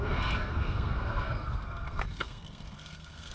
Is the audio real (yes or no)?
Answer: no